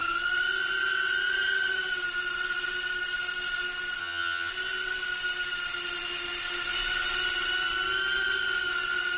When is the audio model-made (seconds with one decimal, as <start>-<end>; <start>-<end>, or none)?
4.0-4.5